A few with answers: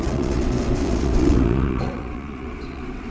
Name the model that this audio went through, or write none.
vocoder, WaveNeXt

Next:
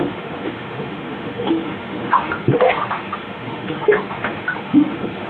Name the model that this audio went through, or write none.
autoencoder, DAC-VAE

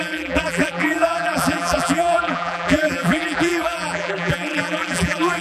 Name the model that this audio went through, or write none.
vocoder, BigVGAN v2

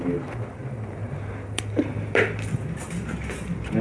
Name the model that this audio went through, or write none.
vocoder, BigVGAN v2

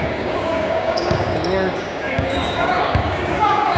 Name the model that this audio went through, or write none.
codec, DAC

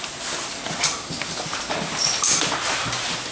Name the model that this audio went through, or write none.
none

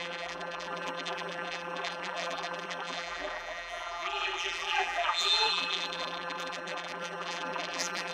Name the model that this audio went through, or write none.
vocoder, BigVGAN v2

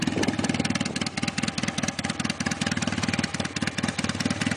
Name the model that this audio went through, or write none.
none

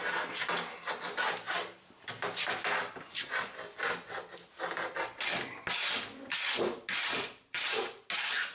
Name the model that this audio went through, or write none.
none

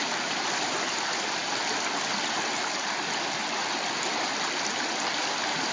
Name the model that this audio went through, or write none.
none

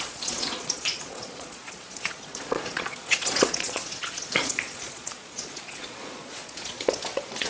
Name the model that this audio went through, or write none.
vocoder, Vocos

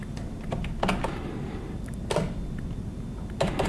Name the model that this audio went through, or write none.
none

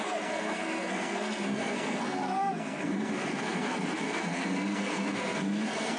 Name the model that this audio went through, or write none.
codec, SNAC